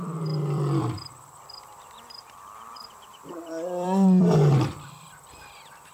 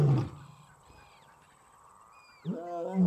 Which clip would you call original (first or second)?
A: second